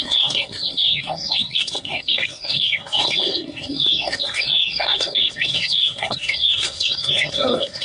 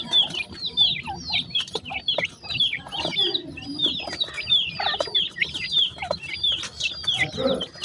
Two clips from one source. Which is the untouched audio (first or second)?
second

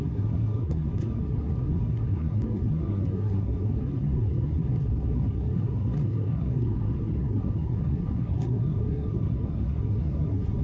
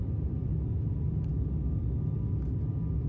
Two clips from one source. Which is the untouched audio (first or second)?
second